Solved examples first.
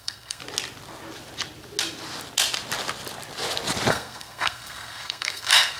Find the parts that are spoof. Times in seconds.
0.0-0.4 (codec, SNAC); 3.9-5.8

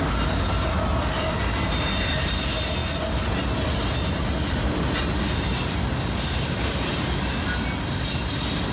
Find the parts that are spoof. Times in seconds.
none

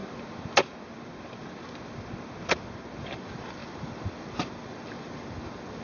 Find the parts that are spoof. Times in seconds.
3.0-5.8 (vocoder, BigVGAN v2)

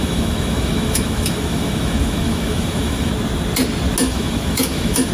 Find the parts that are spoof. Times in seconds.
0.0-3.1 (autoencoder, DAC-VAE); 4.0-5.1

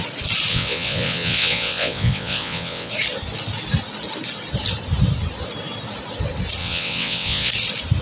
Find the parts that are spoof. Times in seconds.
0.5-2.9 (vocoder, WaveNeXt); 6.6-7.5

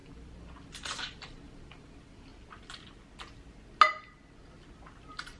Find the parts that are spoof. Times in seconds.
0.0-2.3 (vocoder, BigVGAN v2); 5.0-5.4

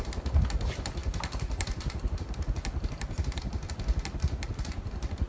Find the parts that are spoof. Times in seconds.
none

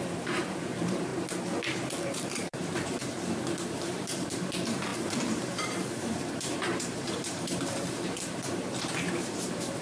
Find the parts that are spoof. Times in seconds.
0.0-1.1 (vocoder, BigVGAN v2); 2.0-3.0; 3.6-9.8